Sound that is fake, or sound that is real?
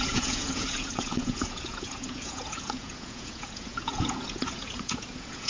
fake